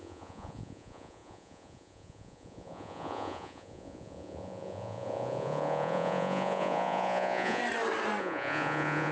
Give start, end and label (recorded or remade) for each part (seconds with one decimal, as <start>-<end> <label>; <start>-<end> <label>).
0.0-7.6 remade; 7.6-8.2 recorded; 8.2-9.1 remade